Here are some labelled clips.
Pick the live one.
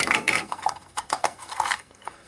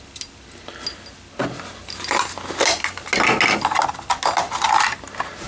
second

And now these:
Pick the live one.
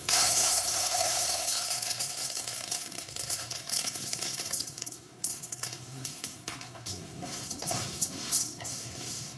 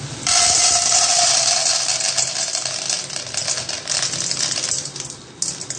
second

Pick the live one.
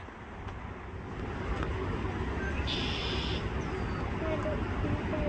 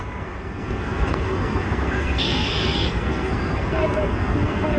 first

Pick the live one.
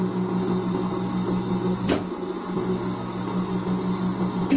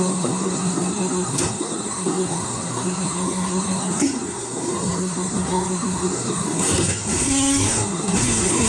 first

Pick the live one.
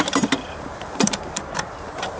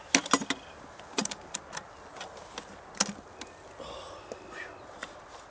second